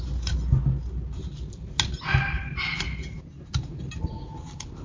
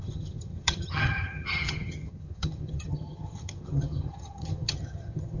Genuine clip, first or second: first